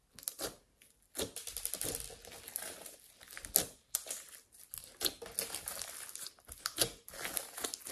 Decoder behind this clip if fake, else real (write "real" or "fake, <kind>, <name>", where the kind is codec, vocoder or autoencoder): real